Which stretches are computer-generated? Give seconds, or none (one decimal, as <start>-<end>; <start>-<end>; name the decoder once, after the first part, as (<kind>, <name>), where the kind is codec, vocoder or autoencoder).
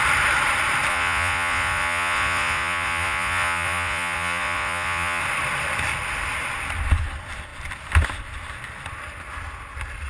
0.9-5.2 (vocoder, Vocos)